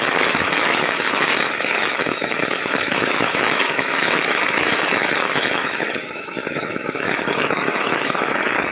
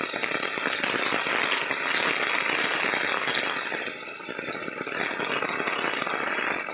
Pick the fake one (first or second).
first